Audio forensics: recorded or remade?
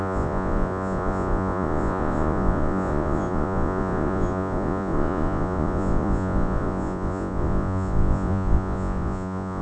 remade